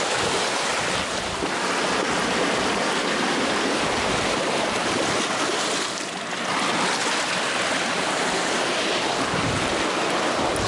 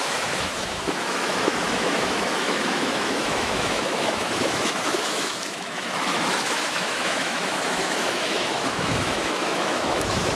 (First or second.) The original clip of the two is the first